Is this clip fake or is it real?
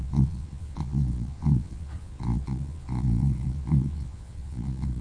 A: fake